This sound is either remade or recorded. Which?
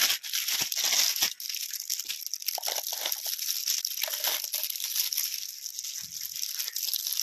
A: recorded